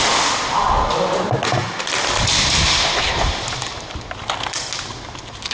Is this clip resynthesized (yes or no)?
no